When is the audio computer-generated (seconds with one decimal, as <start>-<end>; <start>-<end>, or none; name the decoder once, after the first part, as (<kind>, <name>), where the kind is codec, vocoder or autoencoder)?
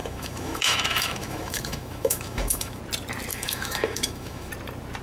0.0-2.8 (autoencoder, DAC-VAE); 3.3-4.5